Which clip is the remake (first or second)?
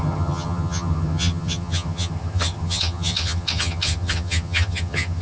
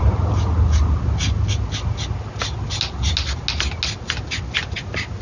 first